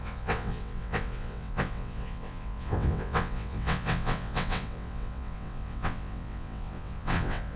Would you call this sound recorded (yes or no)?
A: no